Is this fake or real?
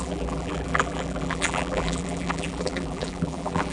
fake